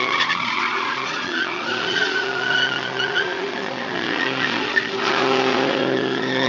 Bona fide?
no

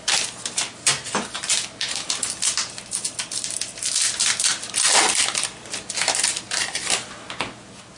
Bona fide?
yes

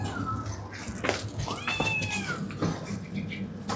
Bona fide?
yes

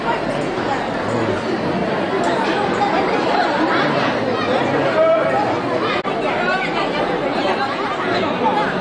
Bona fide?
yes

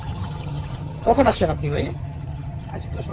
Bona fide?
no